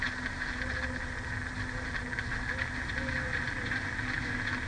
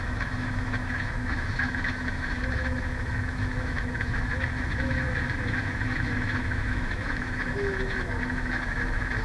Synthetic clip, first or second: second